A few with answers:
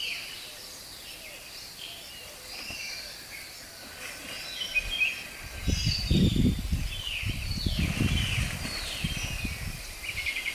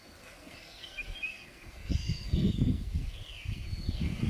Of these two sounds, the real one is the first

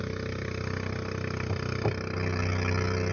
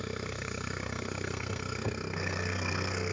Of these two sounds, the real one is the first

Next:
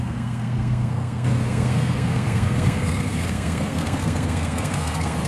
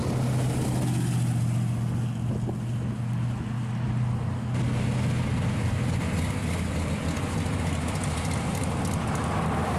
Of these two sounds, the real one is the second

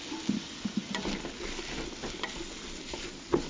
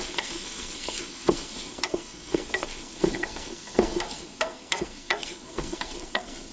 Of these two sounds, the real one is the first